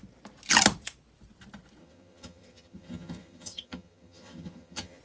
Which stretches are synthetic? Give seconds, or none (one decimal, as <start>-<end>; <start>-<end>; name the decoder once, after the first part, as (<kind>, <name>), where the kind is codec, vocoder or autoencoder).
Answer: 1.8-5.0 (vocoder, HiFi-GAN)